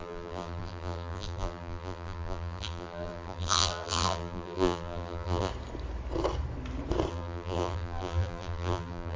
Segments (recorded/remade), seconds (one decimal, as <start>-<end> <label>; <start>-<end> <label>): 0.0-5.5 remade; 5.5-7.1 recorded; 7.1-9.2 remade